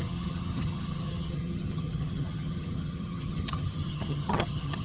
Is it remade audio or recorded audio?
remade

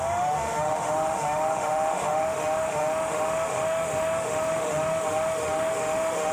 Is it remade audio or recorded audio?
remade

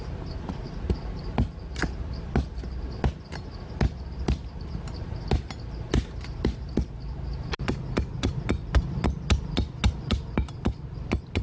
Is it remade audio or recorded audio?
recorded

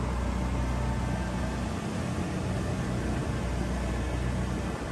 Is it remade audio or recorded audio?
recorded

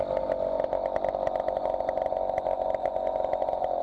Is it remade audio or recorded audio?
recorded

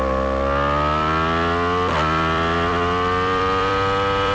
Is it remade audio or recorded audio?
remade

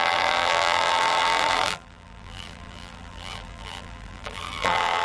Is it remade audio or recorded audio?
remade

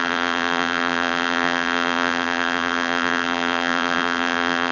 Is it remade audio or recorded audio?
remade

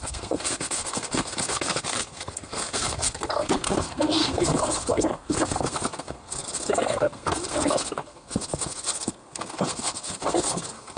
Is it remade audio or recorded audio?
remade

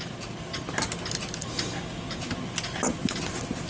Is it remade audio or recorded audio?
recorded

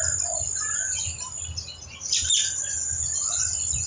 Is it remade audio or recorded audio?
recorded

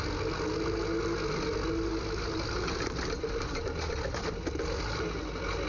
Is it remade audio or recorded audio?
recorded